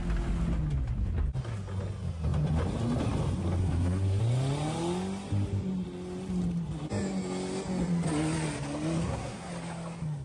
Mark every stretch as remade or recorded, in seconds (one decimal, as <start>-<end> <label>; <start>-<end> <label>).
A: 0.0-3.6 recorded; 3.6-4.2 remade; 4.2-9.0 recorded; 9.0-9.5 remade; 9.5-10.2 recorded